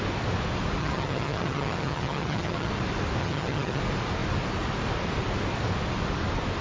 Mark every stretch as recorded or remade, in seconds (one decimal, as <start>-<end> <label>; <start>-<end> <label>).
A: 0.0-0.8 recorded; 0.8-2.7 remade; 2.7-3.2 recorded; 3.2-3.8 remade; 3.8-6.6 recorded